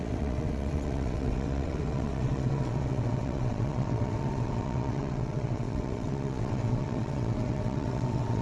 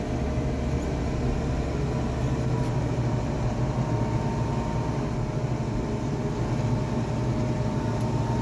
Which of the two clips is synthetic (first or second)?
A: first